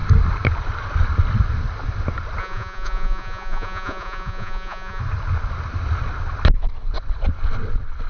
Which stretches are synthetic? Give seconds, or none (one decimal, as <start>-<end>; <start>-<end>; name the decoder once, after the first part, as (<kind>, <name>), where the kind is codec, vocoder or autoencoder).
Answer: 2.4-5.0 (vocoder, Vocos)